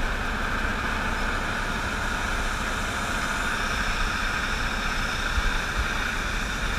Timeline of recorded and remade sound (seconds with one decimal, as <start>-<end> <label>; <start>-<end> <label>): 0.0-6.8 recorded